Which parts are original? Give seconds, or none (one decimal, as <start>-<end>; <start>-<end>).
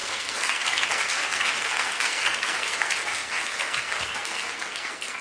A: none